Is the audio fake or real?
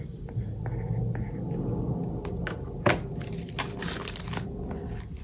real